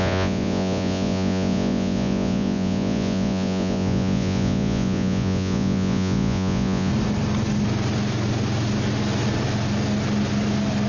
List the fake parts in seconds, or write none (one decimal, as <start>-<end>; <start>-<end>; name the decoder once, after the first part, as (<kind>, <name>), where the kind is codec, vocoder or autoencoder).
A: 0.0-6.9 (vocoder, Vocos)

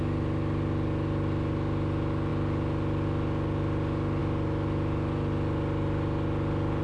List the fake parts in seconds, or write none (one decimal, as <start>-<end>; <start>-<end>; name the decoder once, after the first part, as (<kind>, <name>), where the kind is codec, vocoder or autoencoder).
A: none

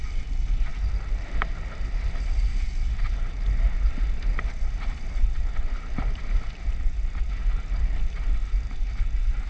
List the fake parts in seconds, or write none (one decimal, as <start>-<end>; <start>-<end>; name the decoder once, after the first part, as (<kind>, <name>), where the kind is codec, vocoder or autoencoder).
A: none

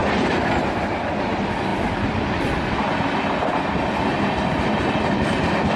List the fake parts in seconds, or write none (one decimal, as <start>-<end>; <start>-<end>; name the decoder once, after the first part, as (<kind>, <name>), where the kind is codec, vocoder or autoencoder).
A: none

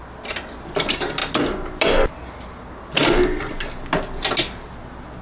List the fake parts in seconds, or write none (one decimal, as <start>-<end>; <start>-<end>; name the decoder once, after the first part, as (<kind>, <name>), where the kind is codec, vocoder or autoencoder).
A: none

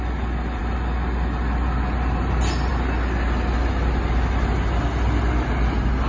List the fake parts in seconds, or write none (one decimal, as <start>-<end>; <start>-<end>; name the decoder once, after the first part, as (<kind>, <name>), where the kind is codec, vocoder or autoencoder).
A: none

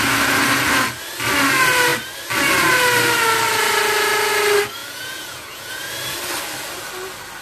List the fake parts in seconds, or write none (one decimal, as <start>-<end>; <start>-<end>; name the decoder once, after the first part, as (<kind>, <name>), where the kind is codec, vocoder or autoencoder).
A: 4.8-5.9 (vocoder, Vocos)